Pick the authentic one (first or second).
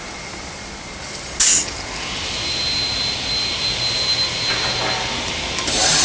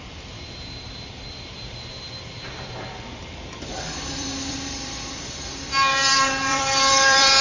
first